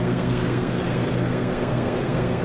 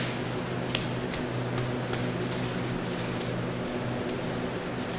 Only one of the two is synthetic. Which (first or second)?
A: first